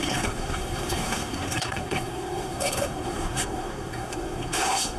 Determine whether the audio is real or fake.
fake